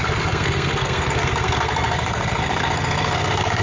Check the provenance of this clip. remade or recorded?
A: remade